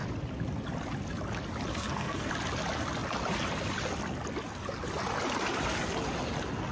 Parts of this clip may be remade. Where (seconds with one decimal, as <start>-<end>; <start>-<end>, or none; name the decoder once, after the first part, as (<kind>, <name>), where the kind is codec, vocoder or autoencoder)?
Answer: 1.7-2.3 (codec, SNAC)